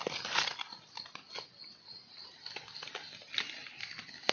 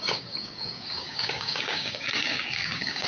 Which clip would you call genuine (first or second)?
first